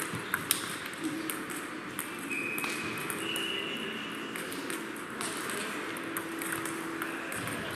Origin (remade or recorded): recorded